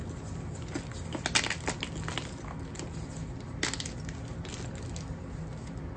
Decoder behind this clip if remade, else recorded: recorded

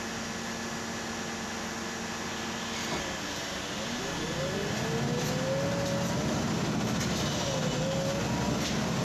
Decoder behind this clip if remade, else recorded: recorded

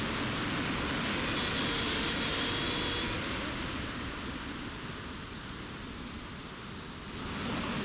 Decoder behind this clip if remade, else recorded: recorded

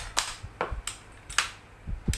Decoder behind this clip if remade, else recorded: recorded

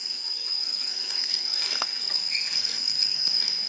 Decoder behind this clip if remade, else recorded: remade, codec, SNAC